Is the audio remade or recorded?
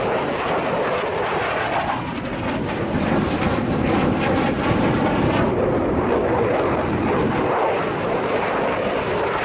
recorded